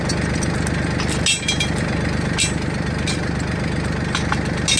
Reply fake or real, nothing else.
real